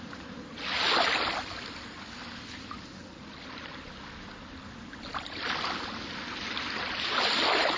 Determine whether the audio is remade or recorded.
recorded